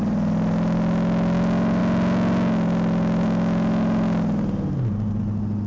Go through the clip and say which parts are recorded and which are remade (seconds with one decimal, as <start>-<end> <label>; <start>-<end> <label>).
0.0-5.7 recorded